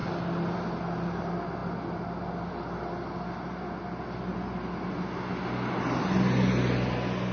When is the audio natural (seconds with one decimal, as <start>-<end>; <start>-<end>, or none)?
0.0-7.3